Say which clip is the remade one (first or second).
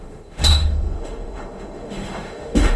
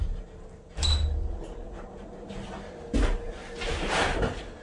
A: first